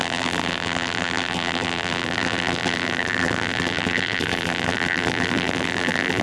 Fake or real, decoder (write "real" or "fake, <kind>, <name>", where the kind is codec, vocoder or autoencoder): fake, vocoder, BigVGAN v2